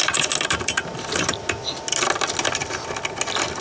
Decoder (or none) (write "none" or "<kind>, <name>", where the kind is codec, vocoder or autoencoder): none